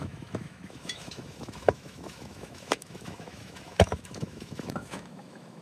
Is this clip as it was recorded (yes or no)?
no